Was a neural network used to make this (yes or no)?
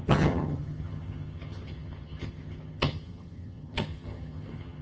yes